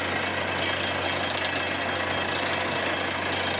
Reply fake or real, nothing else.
real